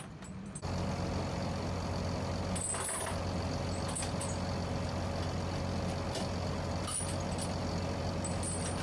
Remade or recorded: recorded